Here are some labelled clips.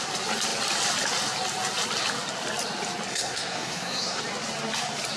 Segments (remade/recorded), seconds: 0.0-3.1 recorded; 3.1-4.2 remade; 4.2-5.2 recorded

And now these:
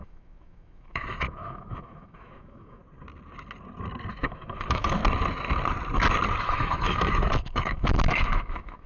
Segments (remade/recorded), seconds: 0.0-2.8 remade; 2.8-4.1 recorded; 4.1-5.0 remade; 5.0-6.4 recorded; 6.4-8.9 remade

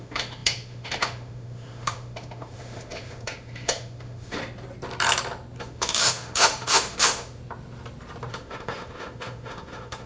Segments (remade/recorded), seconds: 0.0-4.4 remade; 4.4-5.6 recorded; 5.6-7.4 remade; 7.4-8.3 recorded; 8.3-10.1 remade

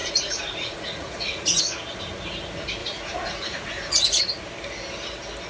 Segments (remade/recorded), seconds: 0.0-1.6 remade; 1.6-2.8 recorded; 2.8-4.2 remade; 4.2-5.5 recorded

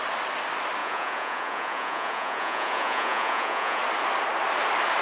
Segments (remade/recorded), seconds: 0.0-0.8 recorded; 0.8-3.8 remade; 3.8-5.0 recorded

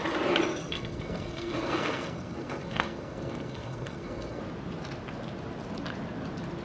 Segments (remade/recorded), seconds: 0.0-0.5 recorded; 0.5-4.4 remade; 4.4-6.6 recorded